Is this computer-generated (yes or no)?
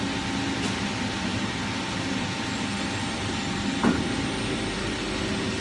no